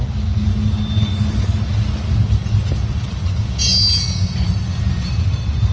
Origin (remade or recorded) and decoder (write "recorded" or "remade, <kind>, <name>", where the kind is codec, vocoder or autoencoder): recorded